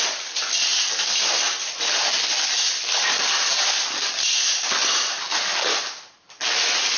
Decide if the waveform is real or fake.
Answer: real